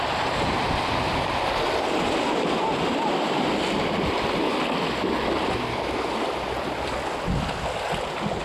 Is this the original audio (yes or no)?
yes